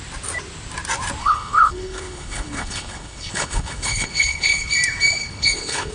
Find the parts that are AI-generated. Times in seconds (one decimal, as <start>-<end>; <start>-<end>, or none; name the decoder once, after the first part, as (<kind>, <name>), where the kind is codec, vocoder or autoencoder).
1.2-4.7 (codec, HILCodec); 5.2-5.9

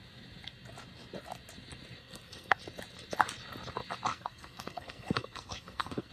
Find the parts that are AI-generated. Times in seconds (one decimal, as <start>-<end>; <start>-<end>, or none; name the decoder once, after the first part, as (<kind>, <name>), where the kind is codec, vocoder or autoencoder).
2.0-2.6 (codec, SNAC); 4.1-6.1

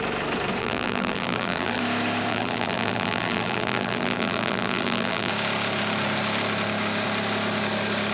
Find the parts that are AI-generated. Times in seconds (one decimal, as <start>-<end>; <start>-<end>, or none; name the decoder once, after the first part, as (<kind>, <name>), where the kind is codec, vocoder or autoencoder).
0.6-1.8 (vocoder, BigVGAN v2); 2.3-5.3

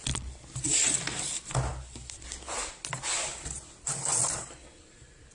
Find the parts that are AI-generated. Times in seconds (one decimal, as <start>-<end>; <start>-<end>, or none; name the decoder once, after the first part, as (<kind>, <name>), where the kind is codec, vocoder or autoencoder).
none

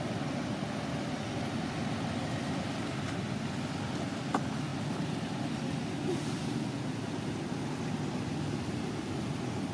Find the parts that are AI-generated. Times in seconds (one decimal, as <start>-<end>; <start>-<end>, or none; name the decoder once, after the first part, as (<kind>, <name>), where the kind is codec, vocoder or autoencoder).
none